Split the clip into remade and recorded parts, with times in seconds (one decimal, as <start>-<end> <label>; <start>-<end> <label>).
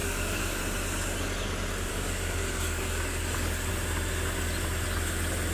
0.0-0.6 remade; 0.6-1.9 recorded; 1.9-3.7 remade; 3.7-5.5 recorded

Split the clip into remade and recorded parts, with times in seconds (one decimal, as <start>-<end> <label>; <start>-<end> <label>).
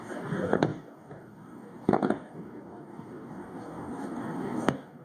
0.0-5.0 remade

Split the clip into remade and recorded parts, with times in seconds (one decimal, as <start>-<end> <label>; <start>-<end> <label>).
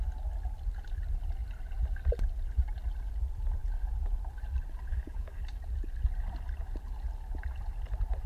0.0-4.9 recorded; 4.9-5.4 remade; 5.4-8.3 recorded